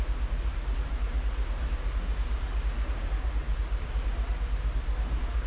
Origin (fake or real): fake